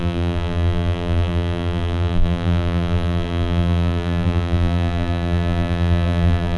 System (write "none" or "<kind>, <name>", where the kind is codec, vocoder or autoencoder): vocoder, BigVGAN v2